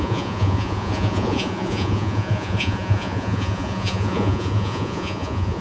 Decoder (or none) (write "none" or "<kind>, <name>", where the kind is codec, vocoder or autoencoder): vocoder, Vocos